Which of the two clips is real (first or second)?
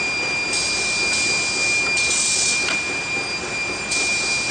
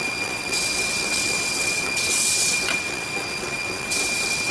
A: first